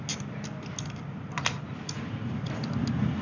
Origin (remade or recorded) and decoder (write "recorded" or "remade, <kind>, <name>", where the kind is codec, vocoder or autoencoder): recorded